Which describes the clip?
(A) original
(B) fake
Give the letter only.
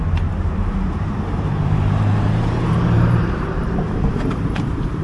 B